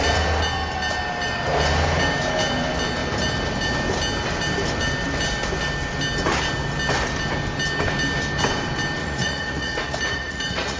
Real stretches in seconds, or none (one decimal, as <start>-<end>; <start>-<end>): 0.0-9.0